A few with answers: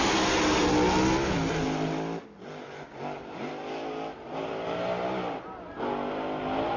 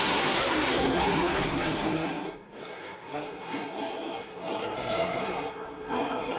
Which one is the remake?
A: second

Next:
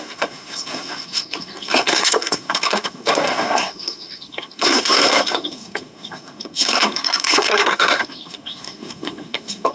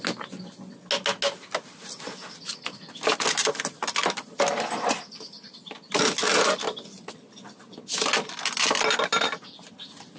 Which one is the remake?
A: first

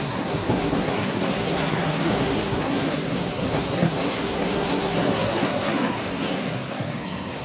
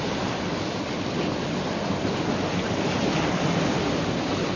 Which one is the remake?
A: first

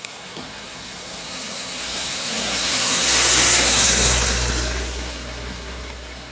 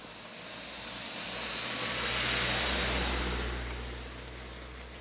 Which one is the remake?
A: first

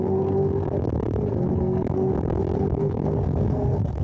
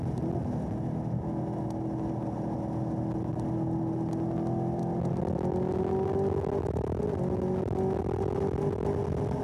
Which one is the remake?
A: first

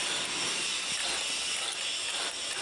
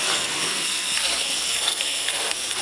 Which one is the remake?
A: second